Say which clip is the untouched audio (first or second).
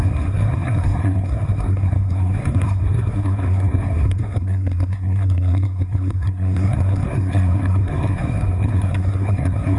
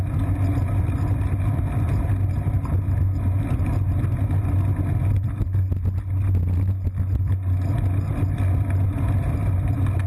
second